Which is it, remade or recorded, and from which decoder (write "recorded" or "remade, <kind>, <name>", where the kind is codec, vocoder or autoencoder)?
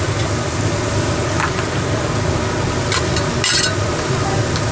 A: recorded